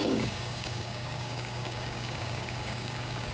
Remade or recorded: remade